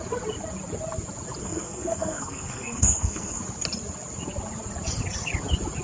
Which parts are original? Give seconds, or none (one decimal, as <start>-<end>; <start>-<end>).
0.0-1.4; 3.4-5.8